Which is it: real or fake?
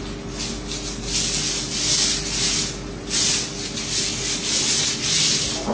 real